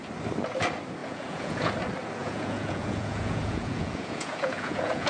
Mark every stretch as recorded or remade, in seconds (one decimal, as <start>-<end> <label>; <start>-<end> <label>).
0.0-1.0 recorded; 1.0-1.7 remade; 1.7-2.2 recorded; 2.2-5.1 remade

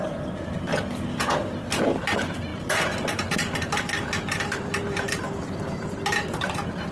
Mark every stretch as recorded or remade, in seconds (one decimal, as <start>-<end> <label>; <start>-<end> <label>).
0.0-0.7 remade; 0.7-1.7 recorded; 1.7-6.9 remade

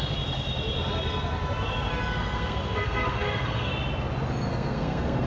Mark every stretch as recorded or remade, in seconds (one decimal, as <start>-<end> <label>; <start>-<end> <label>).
0.0-1.9 recorded; 1.9-3.7 remade; 3.7-4.5 recorded; 4.5-5.3 remade

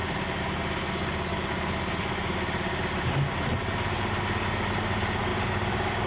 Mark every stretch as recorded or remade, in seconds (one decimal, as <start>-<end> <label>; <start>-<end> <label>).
0.0-5.3 recorded; 5.3-6.1 remade

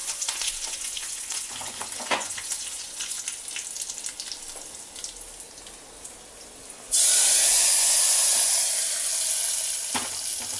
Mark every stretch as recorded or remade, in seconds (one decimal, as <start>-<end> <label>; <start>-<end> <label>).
0.0-3.2 remade; 3.2-7.5 recorded; 7.5-8.5 remade; 8.5-10.6 recorded

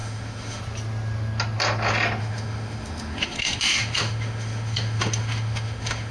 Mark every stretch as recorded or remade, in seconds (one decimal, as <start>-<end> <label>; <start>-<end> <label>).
0.0-0.6 remade; 0.6-2.2 recorded; 2.2-6.1 remade

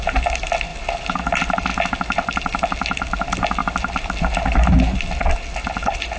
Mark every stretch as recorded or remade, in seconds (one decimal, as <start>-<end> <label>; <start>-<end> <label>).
0.0-6.2 recorded

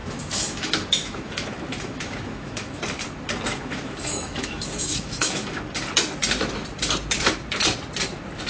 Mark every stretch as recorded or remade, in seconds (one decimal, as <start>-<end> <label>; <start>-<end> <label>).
0.0-2.8 remade; 2.8-3.5 recorded; 3.5-5.6 remade; 5.6-8.5 recorded